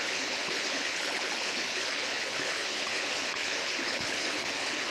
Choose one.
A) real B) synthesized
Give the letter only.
B